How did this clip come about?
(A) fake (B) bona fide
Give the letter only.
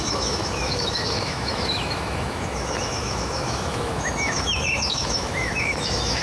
A